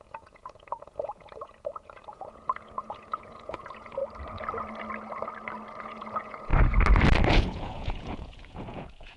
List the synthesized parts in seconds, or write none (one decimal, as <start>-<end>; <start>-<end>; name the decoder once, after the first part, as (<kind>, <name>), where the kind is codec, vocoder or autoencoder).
0.0-4.0 (vocoder, Vocos); 5.8-6.5; 7.3-9.2